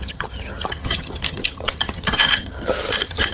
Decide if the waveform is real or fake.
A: fake